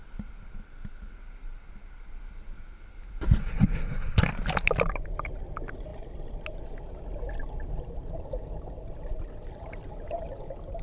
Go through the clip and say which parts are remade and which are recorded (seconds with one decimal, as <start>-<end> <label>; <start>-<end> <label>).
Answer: 0.0-3.4 recorded; 3.4-4.3 remade; 4.3-10.8 recorded